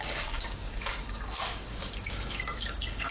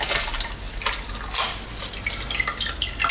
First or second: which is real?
second